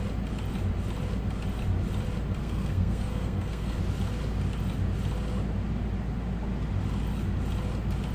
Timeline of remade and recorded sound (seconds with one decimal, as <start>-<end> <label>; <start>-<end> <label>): 0.0-2.4 recorded; 2.4-3.8 remade; 3.8-8.1 recorded